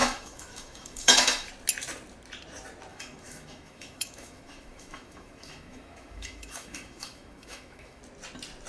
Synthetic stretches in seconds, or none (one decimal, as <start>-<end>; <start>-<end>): 0.0-1.5; 2.9-8.0